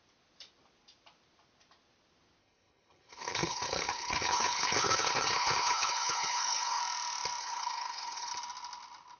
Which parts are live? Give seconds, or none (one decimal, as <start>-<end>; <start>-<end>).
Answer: 0.0-2.4; 6.8-7.4; 8.3-9.2